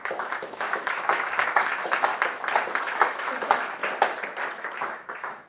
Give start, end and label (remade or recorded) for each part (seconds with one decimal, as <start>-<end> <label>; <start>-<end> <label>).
0.0-2.1 remade; 2.1-2.8 recorded; 2.8-3.8 remade; 3.8-4.5 recorded; 4.5-5.5 remade